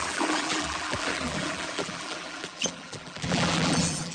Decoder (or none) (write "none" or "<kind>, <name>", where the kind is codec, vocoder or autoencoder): vocoder, BigVGAN v2